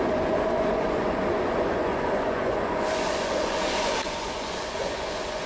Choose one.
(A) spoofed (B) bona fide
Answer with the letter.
A